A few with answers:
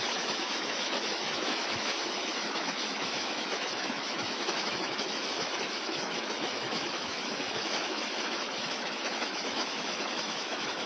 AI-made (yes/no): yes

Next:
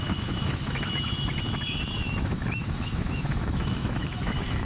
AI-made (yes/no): yes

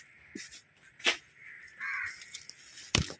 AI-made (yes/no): no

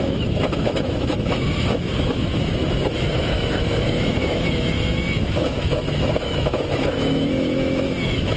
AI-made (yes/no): yes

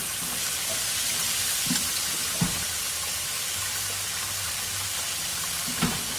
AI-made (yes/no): no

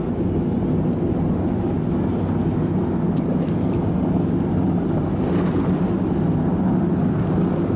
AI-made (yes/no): no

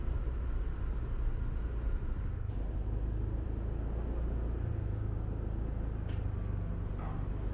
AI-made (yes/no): no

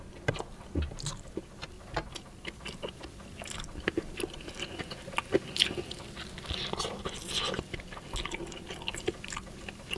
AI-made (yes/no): no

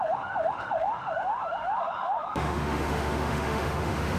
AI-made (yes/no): yes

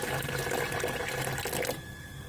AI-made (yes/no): no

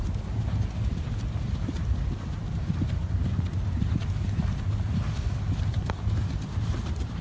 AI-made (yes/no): no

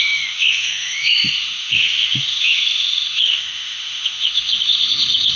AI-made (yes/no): yes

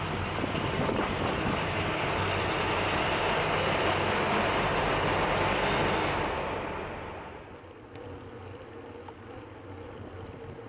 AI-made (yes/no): no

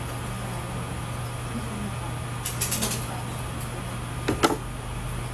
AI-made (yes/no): no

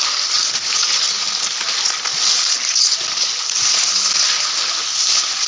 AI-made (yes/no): no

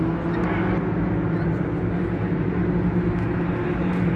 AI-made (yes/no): no